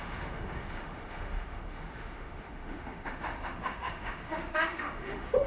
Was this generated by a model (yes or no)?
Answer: yes